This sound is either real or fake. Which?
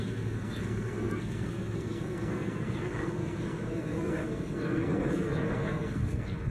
fake